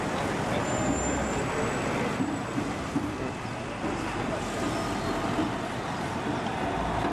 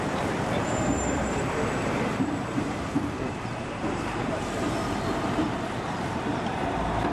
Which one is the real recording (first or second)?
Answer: first